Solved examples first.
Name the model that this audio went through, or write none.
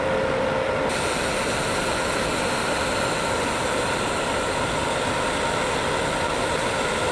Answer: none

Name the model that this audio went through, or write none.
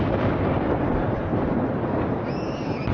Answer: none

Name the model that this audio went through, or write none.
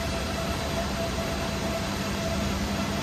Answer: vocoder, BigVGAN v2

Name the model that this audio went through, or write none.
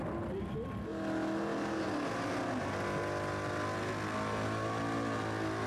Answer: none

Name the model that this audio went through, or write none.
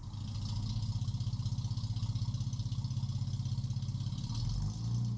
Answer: none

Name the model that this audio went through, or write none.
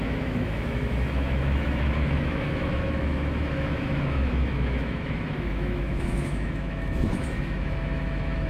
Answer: autoencoder, DAC-VAE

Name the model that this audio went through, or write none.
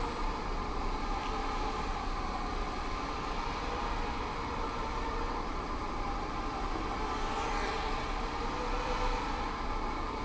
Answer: vocoder, BigVGAN v2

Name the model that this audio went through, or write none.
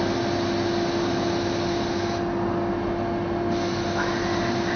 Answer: none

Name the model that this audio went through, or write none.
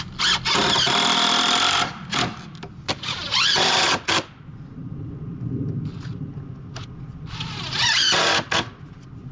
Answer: none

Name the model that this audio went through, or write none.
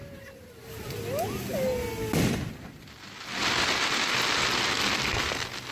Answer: none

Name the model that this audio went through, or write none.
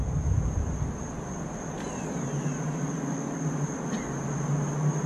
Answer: none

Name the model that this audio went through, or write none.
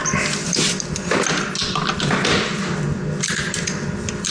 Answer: none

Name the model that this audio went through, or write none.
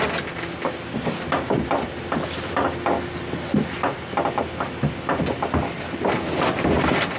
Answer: none